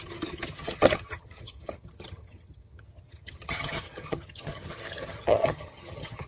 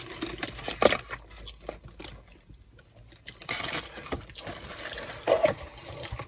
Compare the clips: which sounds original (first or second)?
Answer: second